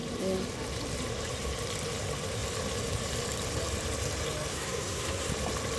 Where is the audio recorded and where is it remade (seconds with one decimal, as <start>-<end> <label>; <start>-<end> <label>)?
0.0-4.5 recorded; 4.5-5.3 remade; 5.3-5.8 recorded